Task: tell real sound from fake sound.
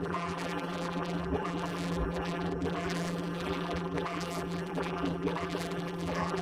fake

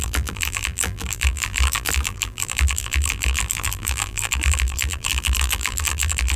fake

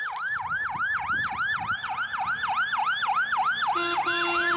real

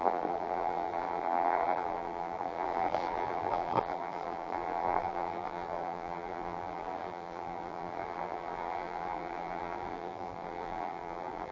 fake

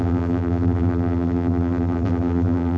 fake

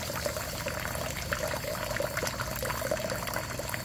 real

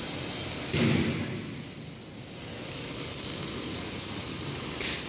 real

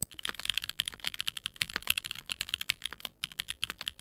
fake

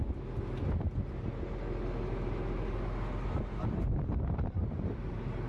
real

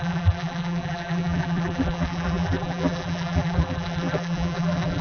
fake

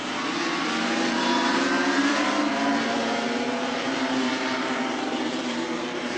fake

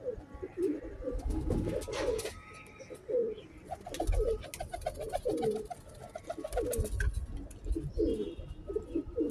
real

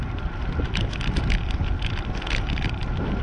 real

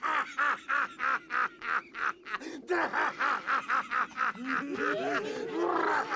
real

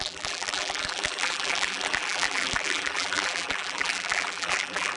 fake